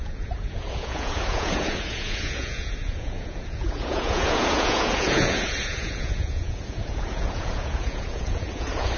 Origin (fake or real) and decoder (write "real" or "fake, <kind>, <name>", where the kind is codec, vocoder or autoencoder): fake, vocoder, Vocos